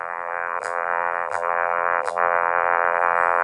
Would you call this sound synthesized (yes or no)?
yes